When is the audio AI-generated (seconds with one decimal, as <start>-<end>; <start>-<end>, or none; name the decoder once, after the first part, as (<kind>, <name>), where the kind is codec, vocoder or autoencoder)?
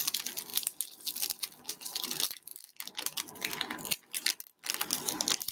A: none